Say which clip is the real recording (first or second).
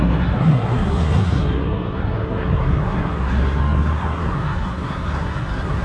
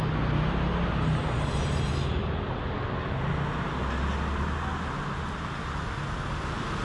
second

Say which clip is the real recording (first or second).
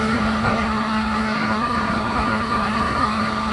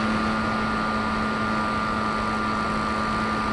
second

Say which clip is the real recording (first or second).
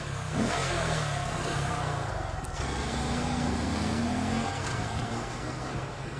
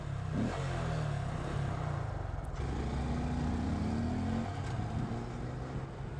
second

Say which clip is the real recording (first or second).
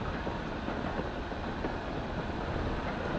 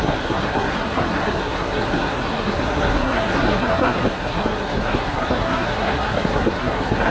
first